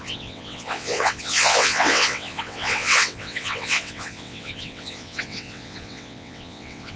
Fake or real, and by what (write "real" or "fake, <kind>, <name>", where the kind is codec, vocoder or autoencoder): fake, vocoder, WaveNeXt